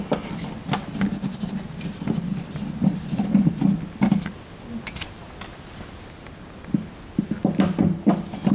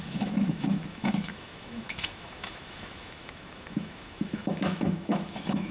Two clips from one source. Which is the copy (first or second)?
second